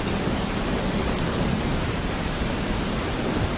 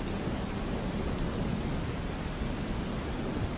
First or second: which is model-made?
first